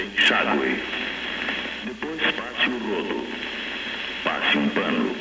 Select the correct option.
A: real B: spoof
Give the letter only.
A